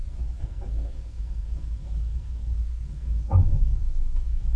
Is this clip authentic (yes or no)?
no